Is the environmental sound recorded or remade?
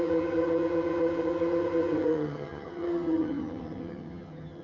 remade